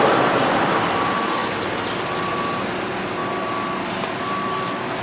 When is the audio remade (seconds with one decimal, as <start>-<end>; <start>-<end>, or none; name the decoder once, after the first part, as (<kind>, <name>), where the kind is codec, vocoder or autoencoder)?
1.4-2.3 (vocoder, BigVGAN v2)